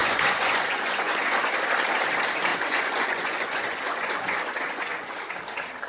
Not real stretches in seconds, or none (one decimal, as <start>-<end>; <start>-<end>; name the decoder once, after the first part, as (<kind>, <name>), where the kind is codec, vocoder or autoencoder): 0.0-1.5 (vocoder, Vocos); 2.5-5.2